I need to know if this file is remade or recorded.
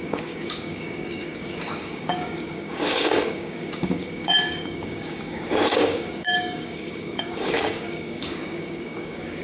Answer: remade